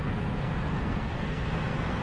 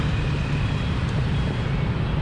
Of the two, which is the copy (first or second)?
first